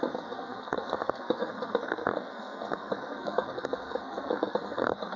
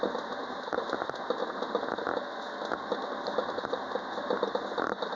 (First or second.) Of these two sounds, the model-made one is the first